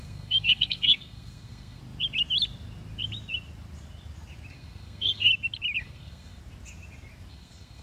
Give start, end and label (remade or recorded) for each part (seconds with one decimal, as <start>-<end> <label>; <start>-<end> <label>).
0.0-1.8 remade; 1.8-4.5 recorded; 4.5-5.3 remade; 5.3-5.8 recorded; 5.8-6.4 remade; 6.4-7.3 recorded; 7.3-7.8 remade